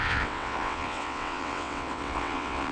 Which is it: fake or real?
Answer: fake